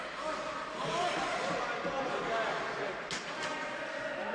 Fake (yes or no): no